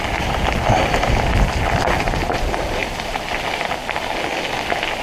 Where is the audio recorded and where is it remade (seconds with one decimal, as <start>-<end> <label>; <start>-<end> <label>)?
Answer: 0.0-5.0 recorded